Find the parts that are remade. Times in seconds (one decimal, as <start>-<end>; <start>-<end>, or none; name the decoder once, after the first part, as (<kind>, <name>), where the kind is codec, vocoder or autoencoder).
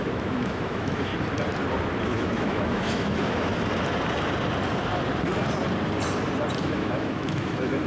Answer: 0.0-1.1 (autoencoder, DAC-VAE); 2.0-3.5; 6.6-7.9